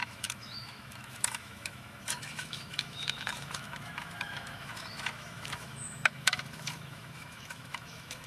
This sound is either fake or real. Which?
fake